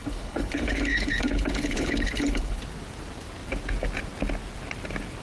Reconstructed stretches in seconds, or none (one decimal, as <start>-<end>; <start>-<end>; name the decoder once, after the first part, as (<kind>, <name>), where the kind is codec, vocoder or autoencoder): 0.0-2.6 (codec, HILCodec)